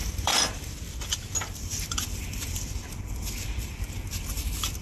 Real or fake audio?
fake